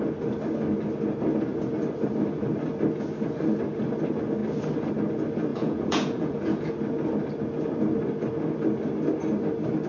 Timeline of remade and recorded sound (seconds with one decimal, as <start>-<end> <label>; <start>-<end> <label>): 0.0-5.5 recorded; 5.5-6.7 remade; 6.7-9.9 recorded